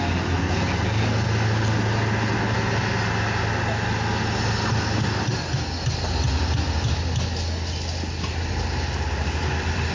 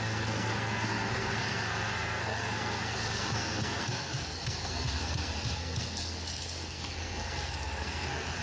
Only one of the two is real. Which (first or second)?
first